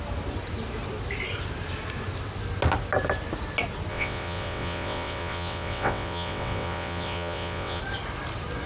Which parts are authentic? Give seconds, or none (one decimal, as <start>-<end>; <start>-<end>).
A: 0.0-3.9; 7.8-8.7

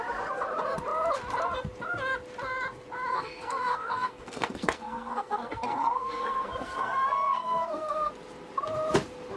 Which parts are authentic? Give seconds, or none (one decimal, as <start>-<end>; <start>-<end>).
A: 0.0-3.1; 8.1-9.4

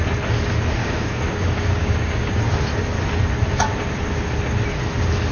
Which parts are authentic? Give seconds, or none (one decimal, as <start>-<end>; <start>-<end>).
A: 0.0-0.8; 2.5-5.3

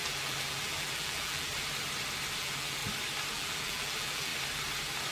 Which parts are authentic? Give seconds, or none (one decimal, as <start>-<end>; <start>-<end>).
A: 1.5-2.4; 2.8-3.3; 4.3-5.1

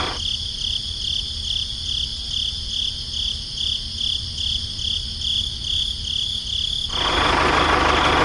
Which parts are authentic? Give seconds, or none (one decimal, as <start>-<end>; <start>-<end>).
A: 0.0-8.2

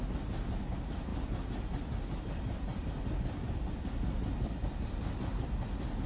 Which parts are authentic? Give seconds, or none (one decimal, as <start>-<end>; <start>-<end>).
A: 0.0-6.1

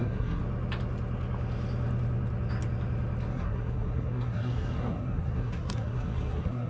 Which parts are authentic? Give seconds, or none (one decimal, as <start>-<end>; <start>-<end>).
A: 0.4-3.3